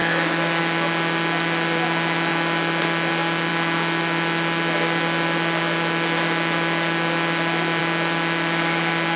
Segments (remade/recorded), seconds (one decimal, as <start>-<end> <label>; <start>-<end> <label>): 0.0-0.6 remade; 0.6-9.2 recorded